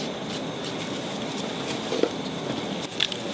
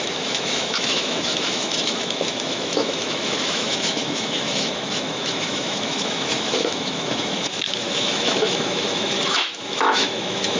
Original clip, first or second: first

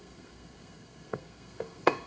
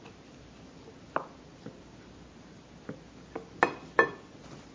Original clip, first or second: second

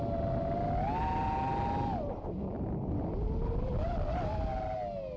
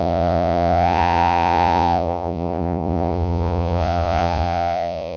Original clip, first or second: first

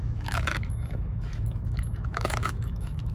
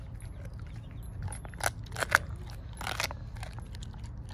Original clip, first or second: second